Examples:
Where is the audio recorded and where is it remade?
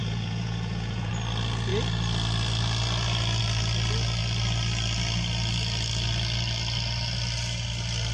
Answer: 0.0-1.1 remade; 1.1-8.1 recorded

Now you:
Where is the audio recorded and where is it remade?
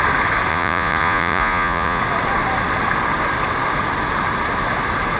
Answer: 0.0-0.5 recorded; 0.5-2.0 remade; 2.0-5.2 recorded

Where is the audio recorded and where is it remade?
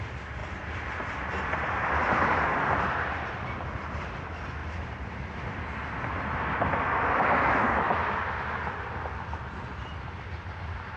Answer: 0.0-11.0 recorded